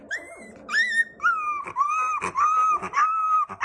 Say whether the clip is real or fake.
real